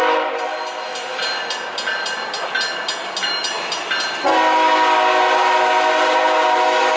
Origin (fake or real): real